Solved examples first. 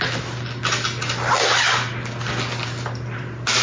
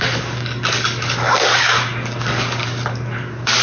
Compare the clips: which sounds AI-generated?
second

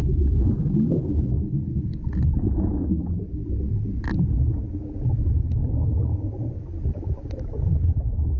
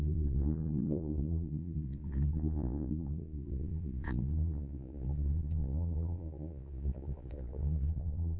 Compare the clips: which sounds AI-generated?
second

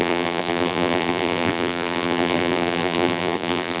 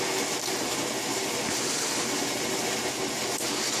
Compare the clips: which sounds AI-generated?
first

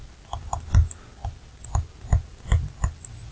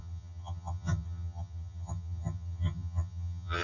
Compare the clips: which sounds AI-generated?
second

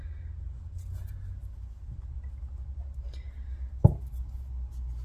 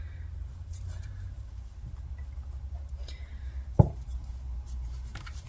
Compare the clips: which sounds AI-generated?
second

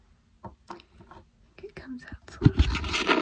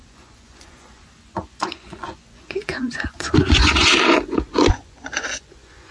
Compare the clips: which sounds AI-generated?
second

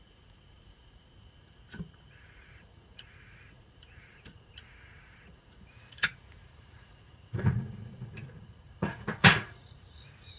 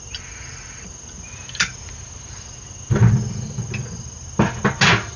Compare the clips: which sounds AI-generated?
first